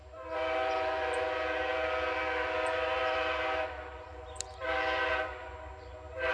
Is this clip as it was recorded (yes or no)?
no